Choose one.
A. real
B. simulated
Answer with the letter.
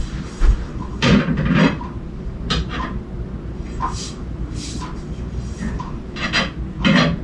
A